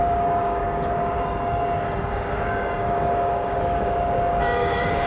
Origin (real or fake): fake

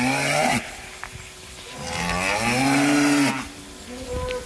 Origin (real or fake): real